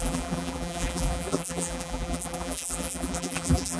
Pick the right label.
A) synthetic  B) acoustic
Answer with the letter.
A